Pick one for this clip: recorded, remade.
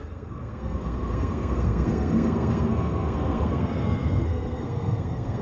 remade